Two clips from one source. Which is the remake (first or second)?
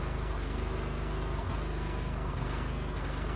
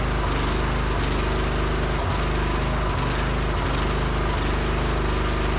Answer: first